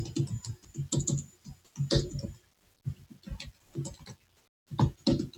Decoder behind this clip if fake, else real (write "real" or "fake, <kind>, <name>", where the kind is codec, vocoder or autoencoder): real